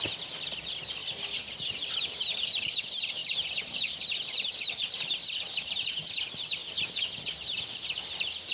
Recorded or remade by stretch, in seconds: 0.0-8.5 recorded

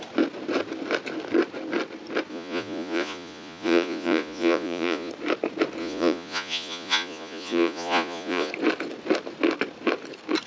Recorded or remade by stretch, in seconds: 0.0-2.3 recorded; 2.3-5.1 remade; 5.1-5.8 recorded; 5.8-8.5 remade; 8.5-10.5 recorded

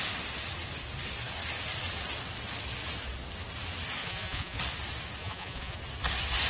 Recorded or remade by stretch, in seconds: 0.0-4.0 recorded; 4.0-4.6 remade; 4.6-5.2 recorded; 5.2-5.8 remade; 5.8-6.5 recorded

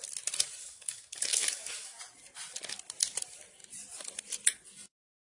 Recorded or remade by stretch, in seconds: 0.0-0.6 recorded; 0.6-2.0 remade; 2.0-5.3 recorded

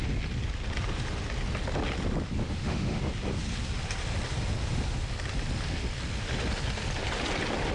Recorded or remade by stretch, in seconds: 0.0-2.4 recorded; 2.4-3.0 remade; 3.0-7.7 recorded